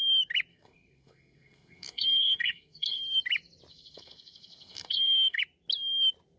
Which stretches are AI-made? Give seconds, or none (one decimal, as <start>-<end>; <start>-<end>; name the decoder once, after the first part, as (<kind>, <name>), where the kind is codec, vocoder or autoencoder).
0.5-3.0 (codec, SNAC); 3.7-5.4

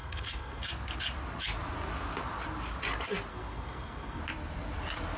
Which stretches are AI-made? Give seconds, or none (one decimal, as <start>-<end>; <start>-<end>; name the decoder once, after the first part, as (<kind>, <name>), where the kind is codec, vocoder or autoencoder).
0.0-0.7 (codec, SNAC); 3.3-4.2

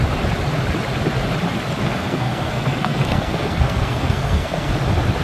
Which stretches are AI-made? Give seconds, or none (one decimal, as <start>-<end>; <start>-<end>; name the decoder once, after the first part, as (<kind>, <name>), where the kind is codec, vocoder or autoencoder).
1.8-4.7 (codec, SNAC)

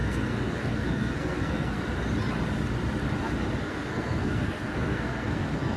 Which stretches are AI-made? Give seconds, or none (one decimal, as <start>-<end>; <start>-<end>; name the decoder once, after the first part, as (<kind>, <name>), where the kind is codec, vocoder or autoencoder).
0.0-1.8 (codec, SNAC); 3.6-5.8

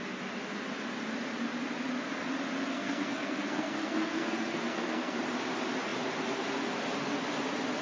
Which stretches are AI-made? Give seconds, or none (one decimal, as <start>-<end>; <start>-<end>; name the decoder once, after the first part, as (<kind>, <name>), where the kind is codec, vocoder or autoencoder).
2.7-5.2 (codec, SNAC)

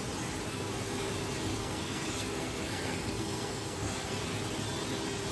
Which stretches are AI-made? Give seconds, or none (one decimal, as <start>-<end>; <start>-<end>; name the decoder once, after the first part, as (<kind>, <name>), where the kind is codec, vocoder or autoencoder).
0.5-1.1 (codec, SNAC); 1.5-4.2

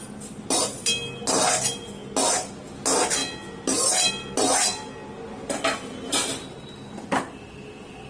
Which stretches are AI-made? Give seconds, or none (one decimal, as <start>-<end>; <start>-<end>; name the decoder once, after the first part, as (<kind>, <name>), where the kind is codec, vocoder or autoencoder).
none